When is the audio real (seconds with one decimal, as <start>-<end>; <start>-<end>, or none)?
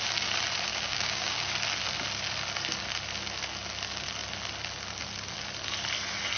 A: 0.0-0.7; 1.5-6.4